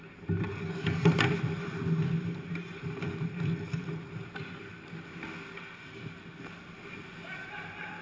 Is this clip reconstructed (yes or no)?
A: no